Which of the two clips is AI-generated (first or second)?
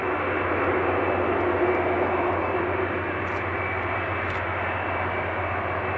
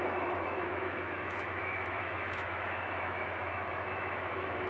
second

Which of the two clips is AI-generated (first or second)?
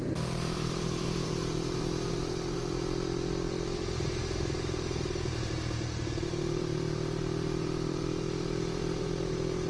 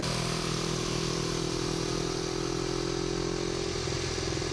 first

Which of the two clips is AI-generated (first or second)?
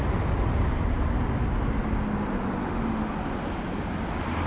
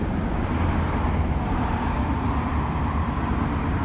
second